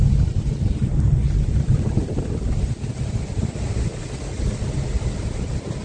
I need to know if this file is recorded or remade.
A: recorded